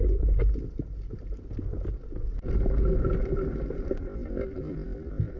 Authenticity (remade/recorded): recorded